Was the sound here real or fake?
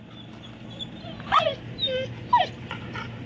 real